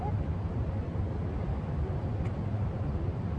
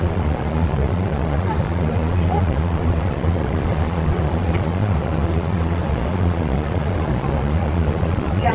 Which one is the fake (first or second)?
second